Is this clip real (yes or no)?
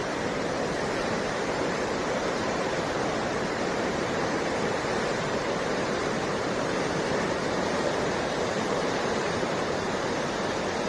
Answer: no